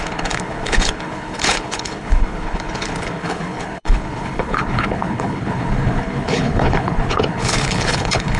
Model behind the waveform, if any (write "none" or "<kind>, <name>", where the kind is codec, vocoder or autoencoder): codec, HILCodec